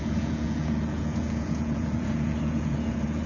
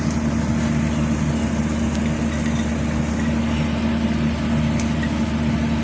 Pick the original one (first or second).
second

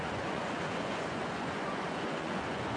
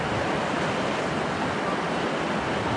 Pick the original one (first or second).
second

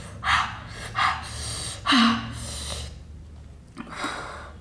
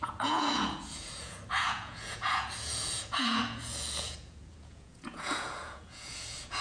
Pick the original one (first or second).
first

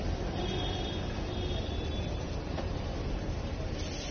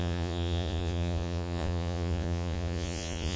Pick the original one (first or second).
first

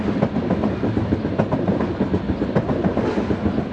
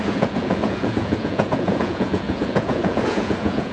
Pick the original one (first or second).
first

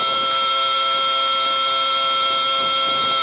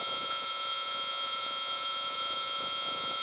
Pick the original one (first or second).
first